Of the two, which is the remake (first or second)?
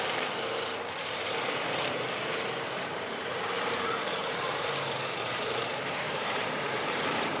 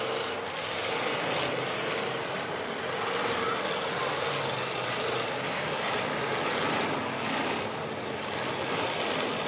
first